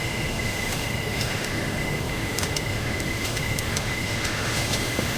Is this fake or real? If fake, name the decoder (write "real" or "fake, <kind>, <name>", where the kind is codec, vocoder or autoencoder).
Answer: fake, autoencoder, DAC-VAE